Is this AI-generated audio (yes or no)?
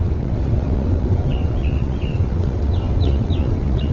yes